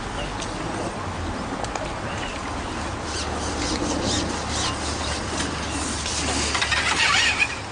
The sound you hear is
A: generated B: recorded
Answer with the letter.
B